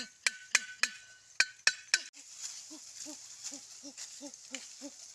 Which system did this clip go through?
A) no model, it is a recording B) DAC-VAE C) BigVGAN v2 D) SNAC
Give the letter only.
A